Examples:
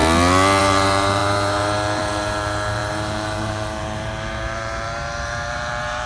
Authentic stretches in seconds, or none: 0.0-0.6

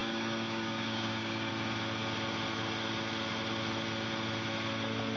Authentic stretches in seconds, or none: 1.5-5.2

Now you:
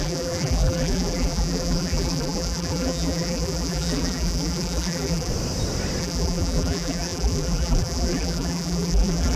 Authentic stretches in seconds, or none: 5.3-6.0